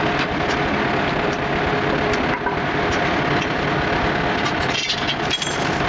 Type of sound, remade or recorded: recorded